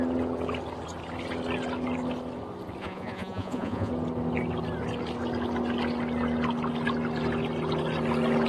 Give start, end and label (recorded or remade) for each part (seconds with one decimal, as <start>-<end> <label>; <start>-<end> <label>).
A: 0.0-2.8 recorded; 2.8-3.9 remade; 3.9-8.5 recorded